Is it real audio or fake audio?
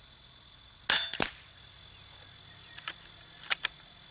real